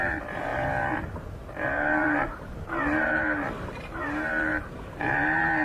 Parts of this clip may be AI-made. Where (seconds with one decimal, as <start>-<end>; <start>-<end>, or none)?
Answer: 0.0-5.6